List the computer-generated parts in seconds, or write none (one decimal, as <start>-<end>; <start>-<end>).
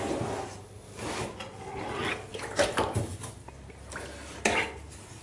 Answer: none